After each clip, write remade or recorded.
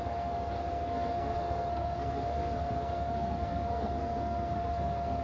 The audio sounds remade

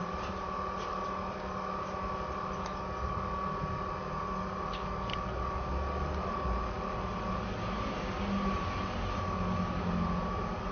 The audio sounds recorded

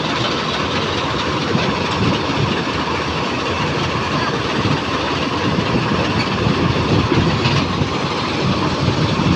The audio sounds recorded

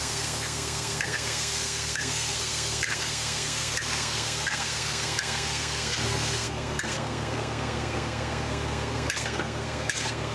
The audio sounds remade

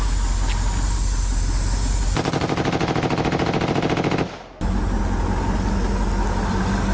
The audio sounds recorded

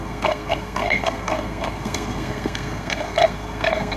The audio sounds remade